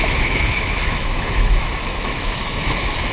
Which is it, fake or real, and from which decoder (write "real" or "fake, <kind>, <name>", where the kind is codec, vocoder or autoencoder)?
fake, autoencoder, DAC-VAE